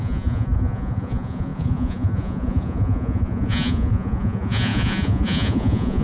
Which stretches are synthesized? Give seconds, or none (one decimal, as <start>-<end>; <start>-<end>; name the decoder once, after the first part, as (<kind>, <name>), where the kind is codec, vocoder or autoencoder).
0.0-6.0 (vocoder, Vocos)